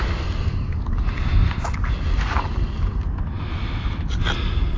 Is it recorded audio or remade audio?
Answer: recorded